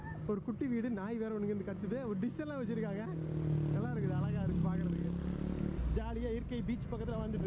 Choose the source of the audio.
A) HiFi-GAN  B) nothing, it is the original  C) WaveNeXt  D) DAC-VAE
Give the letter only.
B